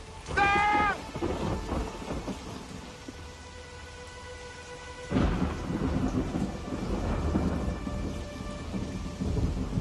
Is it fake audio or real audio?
real